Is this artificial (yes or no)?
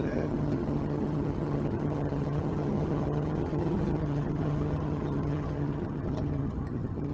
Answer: yes